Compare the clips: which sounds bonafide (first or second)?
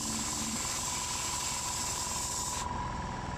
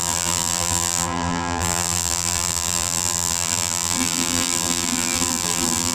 first